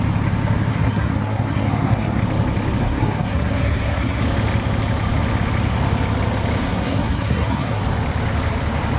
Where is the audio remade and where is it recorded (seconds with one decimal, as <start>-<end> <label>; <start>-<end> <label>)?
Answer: 0.0-0.7 recorded; 0.7-2.2 remade; 2.2-2.8 recorded; 2.8-4.2 remade; 4.2-6.6 recorded; 6.6-7.8 remade; 7.8-9.0 recorded